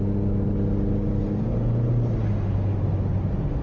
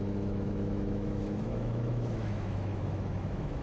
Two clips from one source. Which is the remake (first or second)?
second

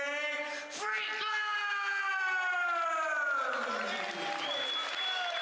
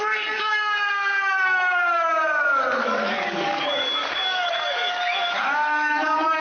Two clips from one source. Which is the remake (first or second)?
second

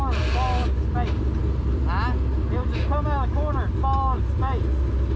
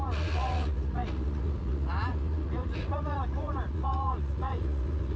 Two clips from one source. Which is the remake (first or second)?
second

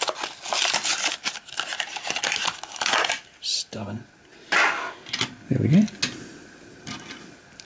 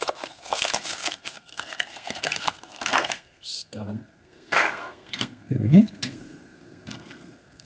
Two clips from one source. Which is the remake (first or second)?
second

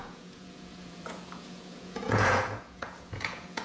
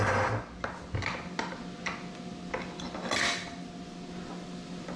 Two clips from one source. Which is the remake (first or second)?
first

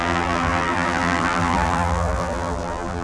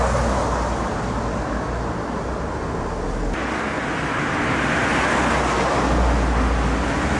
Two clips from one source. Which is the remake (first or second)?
first